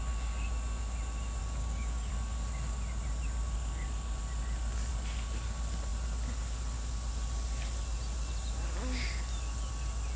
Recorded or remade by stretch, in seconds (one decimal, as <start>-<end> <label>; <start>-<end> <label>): 0.0-1.4 recorded; 1.4-2.1 remade; 2.1-10.2 recorded